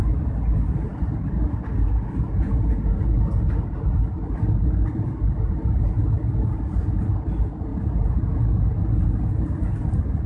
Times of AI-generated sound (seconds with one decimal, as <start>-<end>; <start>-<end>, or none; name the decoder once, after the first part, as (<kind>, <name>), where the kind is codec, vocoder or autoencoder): none